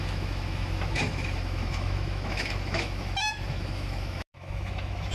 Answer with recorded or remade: remade